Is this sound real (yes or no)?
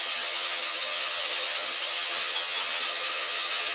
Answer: no